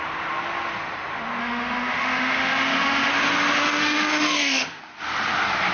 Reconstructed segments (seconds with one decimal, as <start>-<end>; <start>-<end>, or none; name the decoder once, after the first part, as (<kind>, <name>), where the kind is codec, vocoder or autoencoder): 1.4-3.1 (autoencoder, DAC-VAE); 3.6-4.8